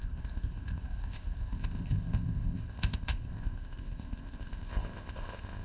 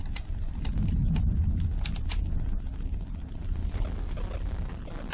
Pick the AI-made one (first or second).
first